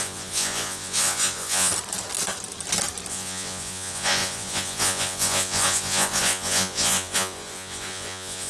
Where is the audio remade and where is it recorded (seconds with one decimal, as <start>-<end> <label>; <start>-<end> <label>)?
0.0-1.7 remade; 1.7-3.1 recorded; 3.1-8.5 remade